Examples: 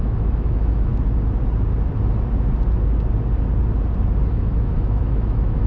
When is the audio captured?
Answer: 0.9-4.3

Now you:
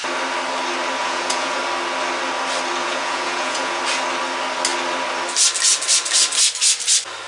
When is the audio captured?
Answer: 0.0-1.0; 1.6-2.8; 3.8-7.3

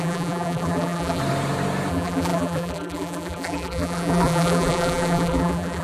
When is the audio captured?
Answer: 1.2-1.9

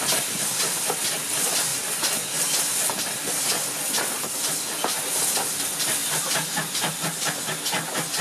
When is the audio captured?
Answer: 0.0-8.2

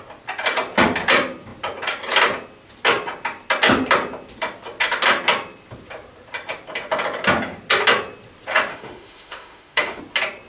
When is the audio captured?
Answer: 0.0-8.7; 10.0-10.5

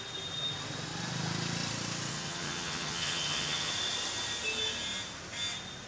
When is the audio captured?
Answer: 0.0-2.1; 3.7-5.9

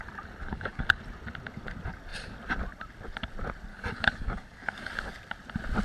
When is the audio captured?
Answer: 0.0-0.4; 1.0-3.7; 5.1-5.8

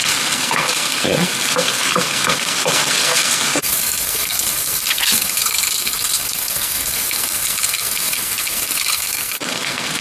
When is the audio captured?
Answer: none